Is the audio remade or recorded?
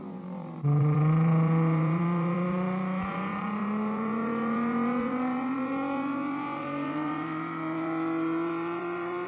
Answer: remade